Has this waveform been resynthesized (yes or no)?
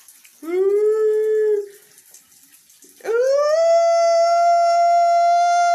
no